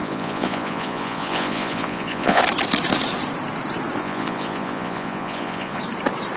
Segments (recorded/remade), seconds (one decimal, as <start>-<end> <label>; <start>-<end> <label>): 0.0-2.4 remade; 2.4-4.0 recorded; 4.0-5.8 remade; 5.8-6.4 recorded